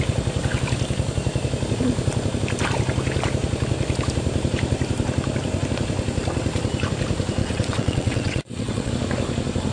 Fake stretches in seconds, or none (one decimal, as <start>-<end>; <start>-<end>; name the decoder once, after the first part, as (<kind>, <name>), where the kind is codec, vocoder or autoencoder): 7.4-8.9 (vocoder, WaveNeXt)